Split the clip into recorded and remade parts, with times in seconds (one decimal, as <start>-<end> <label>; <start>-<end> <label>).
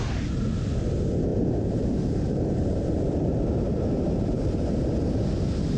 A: 0.0-1.3 recorded; 1.3-4.8 remade; 4.8-5.8 recorded